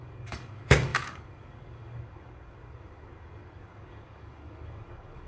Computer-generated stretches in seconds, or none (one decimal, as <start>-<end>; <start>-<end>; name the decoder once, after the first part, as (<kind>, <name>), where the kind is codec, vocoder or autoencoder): 0.0-5.3 (codec, DAC)